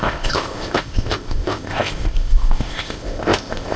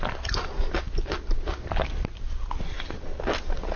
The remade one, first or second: first